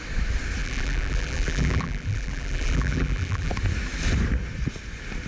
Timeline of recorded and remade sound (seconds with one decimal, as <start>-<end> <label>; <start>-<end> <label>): 0.0-0.6 recorded; 0.6-3.5 remade; 3.5-5.3 recorded